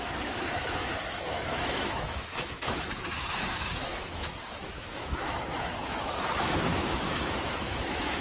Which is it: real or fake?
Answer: fake